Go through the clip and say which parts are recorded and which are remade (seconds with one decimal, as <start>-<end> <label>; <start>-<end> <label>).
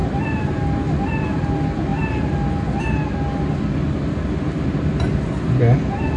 0.0-6.2 recorded